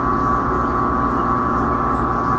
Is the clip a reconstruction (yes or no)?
no